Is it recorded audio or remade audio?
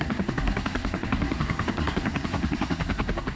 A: remade